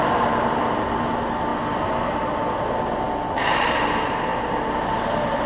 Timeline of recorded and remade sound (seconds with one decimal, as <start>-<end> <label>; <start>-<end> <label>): 0.0-5.5 recorded